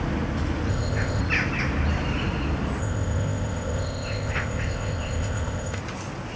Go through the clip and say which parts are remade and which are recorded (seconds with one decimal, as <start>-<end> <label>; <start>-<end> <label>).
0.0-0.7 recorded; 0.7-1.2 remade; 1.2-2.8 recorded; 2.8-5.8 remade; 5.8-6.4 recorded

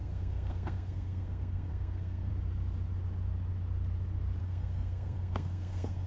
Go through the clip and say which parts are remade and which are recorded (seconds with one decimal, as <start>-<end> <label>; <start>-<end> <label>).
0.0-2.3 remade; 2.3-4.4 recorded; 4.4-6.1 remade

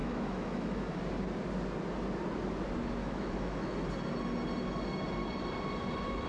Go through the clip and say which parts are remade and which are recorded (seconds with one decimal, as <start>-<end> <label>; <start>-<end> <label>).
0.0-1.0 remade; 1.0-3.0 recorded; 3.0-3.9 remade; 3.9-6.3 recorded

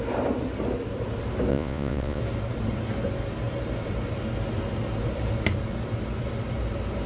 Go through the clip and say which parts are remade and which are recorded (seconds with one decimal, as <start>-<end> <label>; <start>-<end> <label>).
0.0-1.5 recorded; 1.5-2.2 remade; 2.2-7.1 recorded

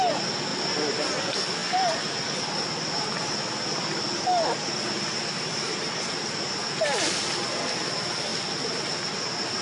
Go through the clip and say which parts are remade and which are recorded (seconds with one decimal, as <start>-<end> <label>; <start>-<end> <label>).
0.0-3.9 recorded; 3.9-7.4 remade; 7.4-8.3 recorded; 8.3-8.8 remade; 8.8-9.6 recorded